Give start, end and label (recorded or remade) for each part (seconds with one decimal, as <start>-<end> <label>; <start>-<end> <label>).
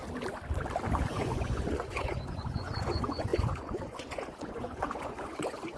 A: 0.0-1.1 recorded; 1.1-5.8 remade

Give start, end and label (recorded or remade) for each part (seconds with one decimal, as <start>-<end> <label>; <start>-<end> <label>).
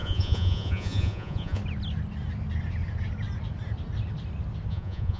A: 0.0-1.6 remade; 1.6-4.7 recorded; 4.7-5.2 remade